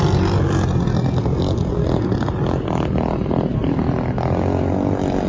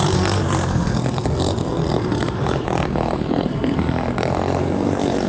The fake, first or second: second